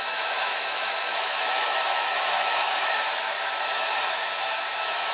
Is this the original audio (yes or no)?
no